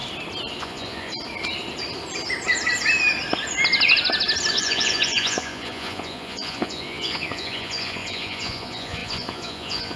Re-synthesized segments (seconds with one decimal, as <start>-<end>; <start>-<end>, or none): 0.6-1.1; 4.5-10.0